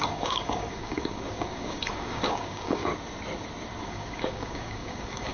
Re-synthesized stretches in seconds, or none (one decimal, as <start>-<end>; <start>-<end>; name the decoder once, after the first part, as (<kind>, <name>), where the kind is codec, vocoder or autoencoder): 0.0-2.9 (codec, DAC); 3.8-5.3